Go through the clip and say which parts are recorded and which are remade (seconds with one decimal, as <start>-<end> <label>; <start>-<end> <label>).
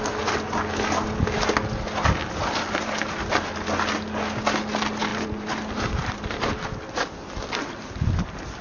0.0-5.1 recorded; 5.1-6.7 remade; 6.7-8.6 recorded